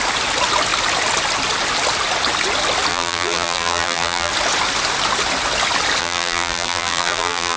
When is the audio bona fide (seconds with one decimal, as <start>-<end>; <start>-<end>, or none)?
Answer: 0.0-2.9; 4.3-6.0